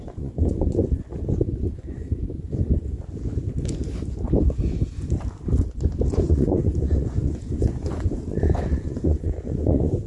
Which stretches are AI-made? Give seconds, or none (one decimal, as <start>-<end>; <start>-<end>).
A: 0.0-0.8; 1.6-2.1; 6.1-10.1